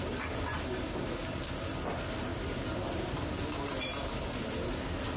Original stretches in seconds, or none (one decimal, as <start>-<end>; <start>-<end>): 0.0-5.2